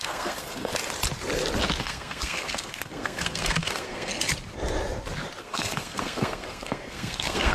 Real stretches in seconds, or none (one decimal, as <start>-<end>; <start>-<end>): 0.7-1.8; 4.1-5.4